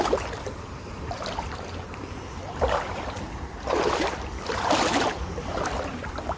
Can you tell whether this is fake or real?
fake